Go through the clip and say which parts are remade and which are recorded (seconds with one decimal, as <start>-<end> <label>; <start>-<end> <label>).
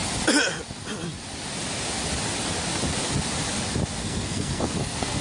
0.0-4.0 recorded; 4.0-5.2 remade